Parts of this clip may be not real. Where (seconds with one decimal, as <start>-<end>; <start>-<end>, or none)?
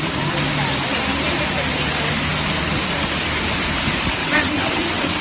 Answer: 4.2-5.2